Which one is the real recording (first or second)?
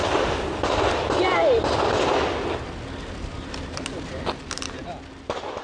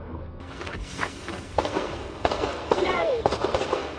first